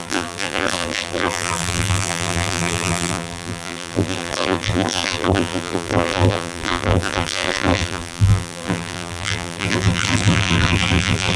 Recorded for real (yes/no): no